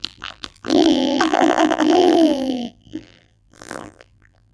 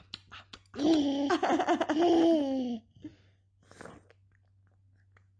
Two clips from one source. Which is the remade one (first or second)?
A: first